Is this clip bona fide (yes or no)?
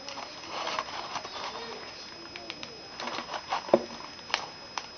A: yes